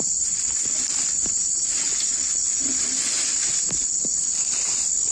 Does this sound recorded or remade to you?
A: recorded